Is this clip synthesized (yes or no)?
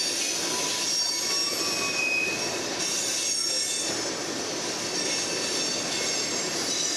no